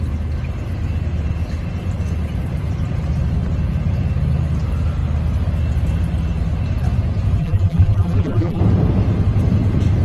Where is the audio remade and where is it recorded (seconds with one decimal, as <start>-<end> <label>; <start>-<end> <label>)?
0.0-7.4 recorded; 7.4-8.6 remade; 8.6-10.0 recorded